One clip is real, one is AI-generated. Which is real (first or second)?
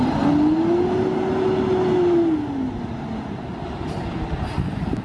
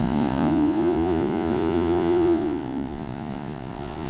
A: first